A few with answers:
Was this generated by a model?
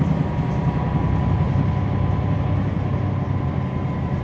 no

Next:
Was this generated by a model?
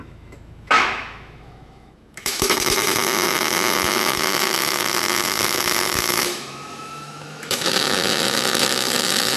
yes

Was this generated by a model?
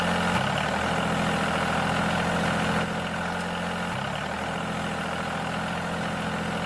no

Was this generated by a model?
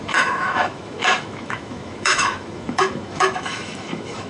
yes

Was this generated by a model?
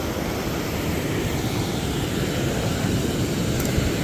no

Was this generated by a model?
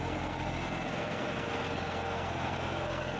yes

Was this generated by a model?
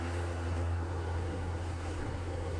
yes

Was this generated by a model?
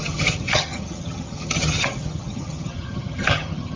yes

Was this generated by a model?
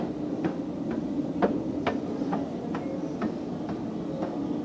no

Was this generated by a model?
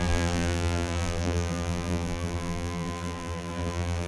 yes